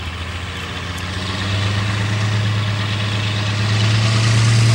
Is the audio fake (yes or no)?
no